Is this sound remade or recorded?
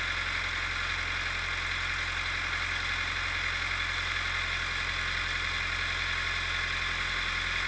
recorded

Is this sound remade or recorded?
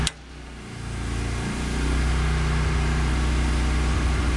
recorded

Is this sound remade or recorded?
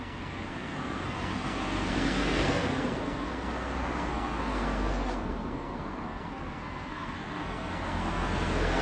remade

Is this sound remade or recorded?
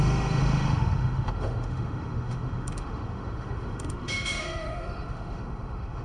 remade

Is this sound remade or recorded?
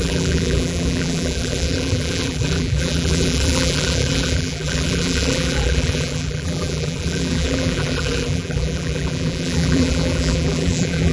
remade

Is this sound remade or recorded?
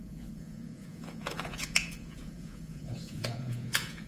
remade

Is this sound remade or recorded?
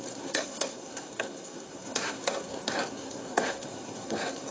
remade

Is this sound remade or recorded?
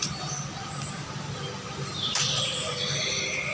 remade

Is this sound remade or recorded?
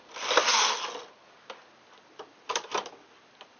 recorded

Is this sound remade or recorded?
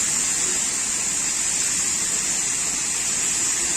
recorded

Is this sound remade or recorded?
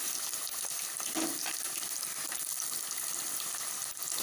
remade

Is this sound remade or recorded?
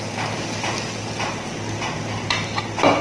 recorded